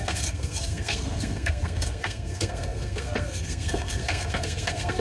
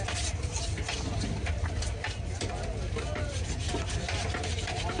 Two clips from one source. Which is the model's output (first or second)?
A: first